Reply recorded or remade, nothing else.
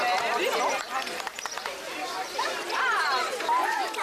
recorded